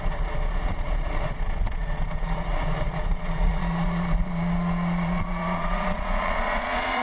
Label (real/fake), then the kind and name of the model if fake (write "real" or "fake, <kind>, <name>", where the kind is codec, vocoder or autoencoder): fake, vocoder, Vocos